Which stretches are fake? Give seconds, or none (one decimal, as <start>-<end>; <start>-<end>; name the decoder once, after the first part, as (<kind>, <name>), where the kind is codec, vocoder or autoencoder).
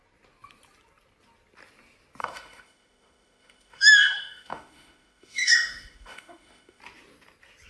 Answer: 2.2-6.8 (autoencoder, DAC-VAE)